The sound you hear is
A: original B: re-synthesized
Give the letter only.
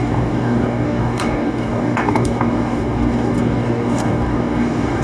B